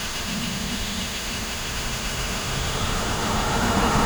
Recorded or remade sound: remade